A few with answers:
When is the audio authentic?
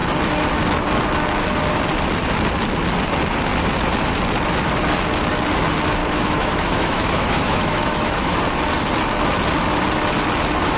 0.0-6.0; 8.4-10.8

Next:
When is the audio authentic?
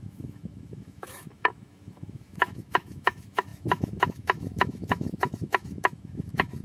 none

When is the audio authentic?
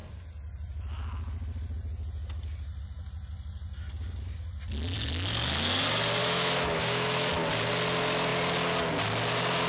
0.0-6.2; 7.3-9.7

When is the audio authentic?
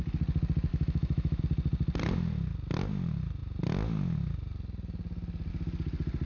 0.0-0.7; 1.4-6.3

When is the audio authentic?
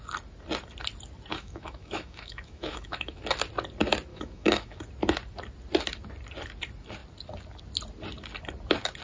0.0-1.3; 3.2-4.1; 4.8-9.0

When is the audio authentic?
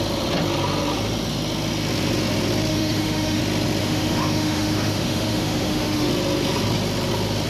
0.0-2.7; 3.4-3.8; 6.1-7.5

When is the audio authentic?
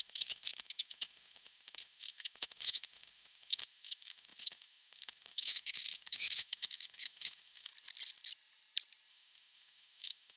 7.7-9.1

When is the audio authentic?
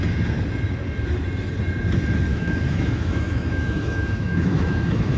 0.0-2.3